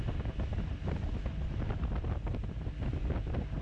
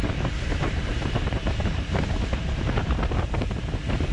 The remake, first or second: second